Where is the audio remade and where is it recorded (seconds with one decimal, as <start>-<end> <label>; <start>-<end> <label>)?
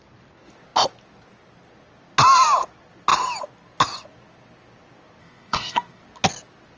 0.0-5.2 recorded; 5.2-6.0 remade; 6.0-6.8 recorded